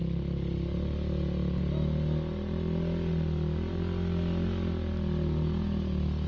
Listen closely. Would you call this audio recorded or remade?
recorded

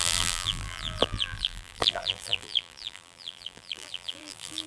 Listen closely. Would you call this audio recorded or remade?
remade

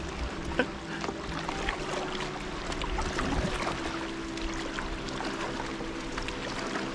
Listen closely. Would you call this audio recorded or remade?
recorded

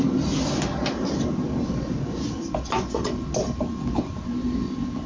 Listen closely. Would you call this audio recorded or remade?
recorded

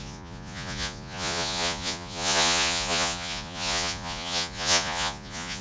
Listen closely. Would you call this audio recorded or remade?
remade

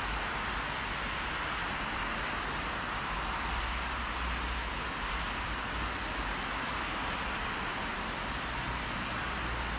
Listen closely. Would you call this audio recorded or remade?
recorded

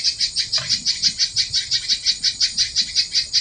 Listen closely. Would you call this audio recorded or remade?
recorded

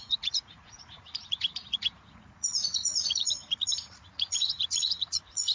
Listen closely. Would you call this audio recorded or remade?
remade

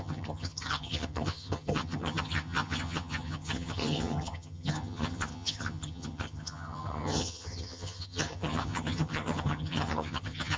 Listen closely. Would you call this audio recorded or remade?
remade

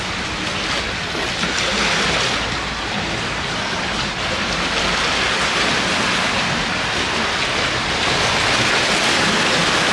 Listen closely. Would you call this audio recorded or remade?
recorded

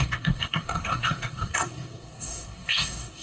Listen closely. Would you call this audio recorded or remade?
remade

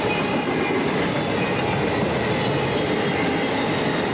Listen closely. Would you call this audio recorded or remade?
recorded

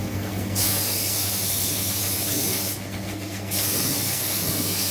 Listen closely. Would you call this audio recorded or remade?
remade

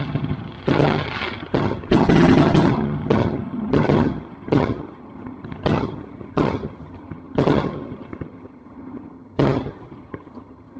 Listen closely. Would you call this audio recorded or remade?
remade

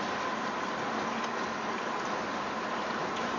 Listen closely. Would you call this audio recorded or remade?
recorded